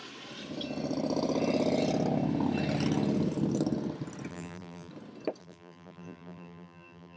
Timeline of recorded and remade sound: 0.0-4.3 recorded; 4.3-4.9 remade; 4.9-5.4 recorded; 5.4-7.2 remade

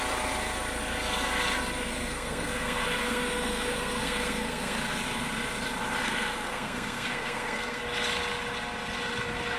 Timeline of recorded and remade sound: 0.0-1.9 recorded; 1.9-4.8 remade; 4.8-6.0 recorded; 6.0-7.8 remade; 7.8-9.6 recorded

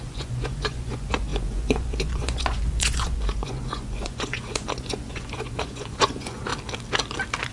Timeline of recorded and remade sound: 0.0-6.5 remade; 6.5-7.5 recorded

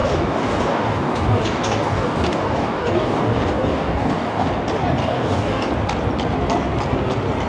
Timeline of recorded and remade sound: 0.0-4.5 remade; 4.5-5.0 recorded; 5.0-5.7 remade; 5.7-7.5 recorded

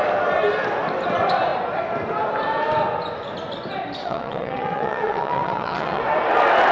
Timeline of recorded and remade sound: 0.0-4.0 recorded; 4.0-6.0 remade; 6.0-6.7 recorded

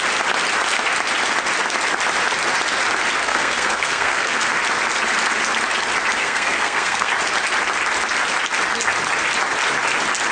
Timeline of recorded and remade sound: 0.0-3.2 recorded; 3.2-4.6 remade; 4.6-6.2 recorded; 6.2-7.1 remade; 7.1-10.3 recorded

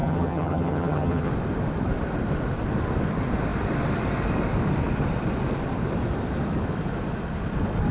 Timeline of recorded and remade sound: 0.0-1.3 remade; 1.3-7.9 recorded

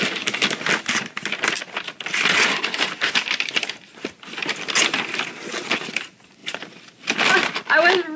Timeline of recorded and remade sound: 0.0-8.2 recorded